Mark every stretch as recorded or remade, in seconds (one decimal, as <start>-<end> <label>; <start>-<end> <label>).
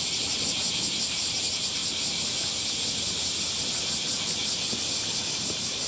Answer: 0.0-1.8 remade; 1.8-5.3 recorded; 5.3-5.9 remade